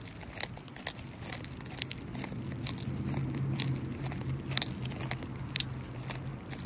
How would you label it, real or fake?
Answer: real